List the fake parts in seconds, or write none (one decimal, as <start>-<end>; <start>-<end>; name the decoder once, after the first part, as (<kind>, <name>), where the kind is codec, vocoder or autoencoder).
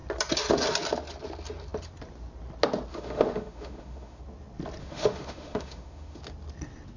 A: 2.9-4.2 (autoencoder, DAC-VAE); 4.8-6.2